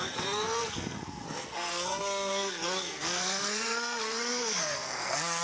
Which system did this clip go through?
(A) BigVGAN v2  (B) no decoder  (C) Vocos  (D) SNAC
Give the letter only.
D